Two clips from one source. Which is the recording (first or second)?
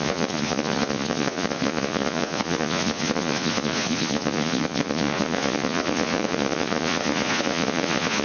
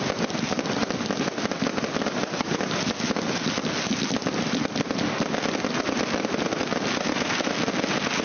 second